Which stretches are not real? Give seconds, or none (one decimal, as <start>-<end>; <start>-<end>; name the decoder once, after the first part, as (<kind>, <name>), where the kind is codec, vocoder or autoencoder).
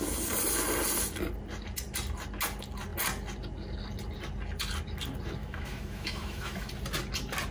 5.4-6.7 (autoencoder, DAC-VAE)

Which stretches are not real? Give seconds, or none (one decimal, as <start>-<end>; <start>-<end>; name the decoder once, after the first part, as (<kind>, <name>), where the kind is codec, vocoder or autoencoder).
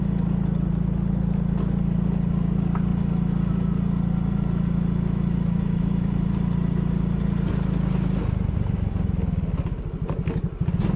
none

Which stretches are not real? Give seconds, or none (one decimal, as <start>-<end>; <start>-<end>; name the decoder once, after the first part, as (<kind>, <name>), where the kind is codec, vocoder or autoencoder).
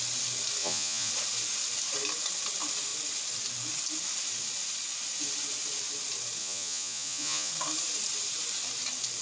0.6-1.1 (vocoder, Vocos); 6.4-7.5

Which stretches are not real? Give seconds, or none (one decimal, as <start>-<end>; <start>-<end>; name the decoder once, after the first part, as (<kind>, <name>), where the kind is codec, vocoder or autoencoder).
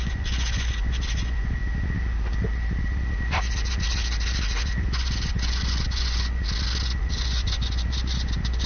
0.0-1.6 (vocoder, Vocos); 4.8-6.4; 7.0-8.7